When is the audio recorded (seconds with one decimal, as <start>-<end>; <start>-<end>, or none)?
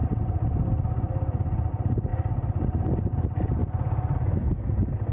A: 0.0-5.1